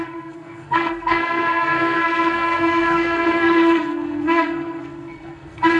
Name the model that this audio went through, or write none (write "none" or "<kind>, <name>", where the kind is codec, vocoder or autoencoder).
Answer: codec, SNAC